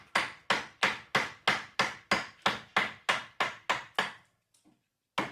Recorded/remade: recorded